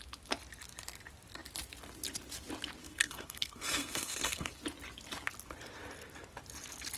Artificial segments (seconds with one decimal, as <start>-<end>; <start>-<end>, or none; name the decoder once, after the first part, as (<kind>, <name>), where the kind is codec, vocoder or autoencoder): 2.8-4.5 (codec, SNAC)